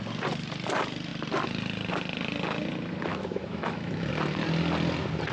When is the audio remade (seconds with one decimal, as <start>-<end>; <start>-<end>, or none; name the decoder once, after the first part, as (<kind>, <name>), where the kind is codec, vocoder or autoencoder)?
3.1-4.1 (autoencoder, DAC-VAE)